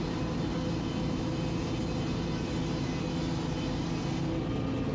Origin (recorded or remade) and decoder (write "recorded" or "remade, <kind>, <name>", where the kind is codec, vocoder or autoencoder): recorded